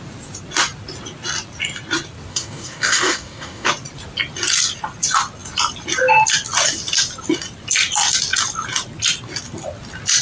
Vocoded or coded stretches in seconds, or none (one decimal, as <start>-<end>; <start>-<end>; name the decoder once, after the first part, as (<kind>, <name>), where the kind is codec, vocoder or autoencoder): 2.3-3.7 (codec, DAC)